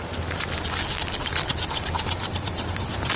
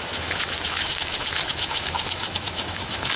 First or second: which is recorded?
first